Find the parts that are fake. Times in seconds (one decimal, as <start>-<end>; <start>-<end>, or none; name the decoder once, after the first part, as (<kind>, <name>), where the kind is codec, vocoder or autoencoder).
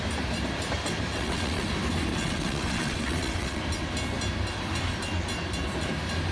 1.1-1.7 (vocoder, WaveNeXt); 2.1-3.6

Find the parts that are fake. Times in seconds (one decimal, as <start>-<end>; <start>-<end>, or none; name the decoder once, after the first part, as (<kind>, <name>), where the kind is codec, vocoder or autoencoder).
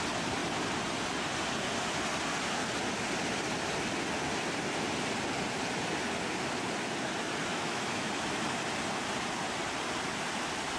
7.5-8.1 (autoencoder, DAC-VAE)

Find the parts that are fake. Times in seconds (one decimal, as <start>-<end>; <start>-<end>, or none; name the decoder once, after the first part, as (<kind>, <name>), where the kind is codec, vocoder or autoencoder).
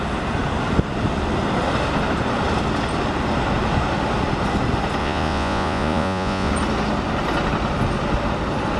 5.0-6.5 (vocoder, Vocos)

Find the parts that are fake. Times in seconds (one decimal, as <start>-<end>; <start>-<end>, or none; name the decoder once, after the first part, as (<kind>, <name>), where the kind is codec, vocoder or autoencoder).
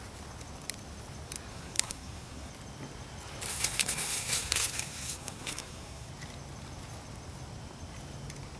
1.5-2.5 (codec, SNAC); 3.5-6.1